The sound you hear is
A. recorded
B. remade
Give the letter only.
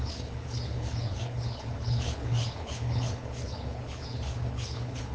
B